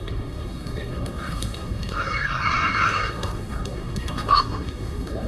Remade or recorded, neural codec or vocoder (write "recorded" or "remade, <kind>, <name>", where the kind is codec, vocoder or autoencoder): remade, codec, SNAC